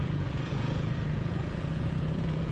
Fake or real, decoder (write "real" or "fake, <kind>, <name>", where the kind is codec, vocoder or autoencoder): fake, vocoder, Vocos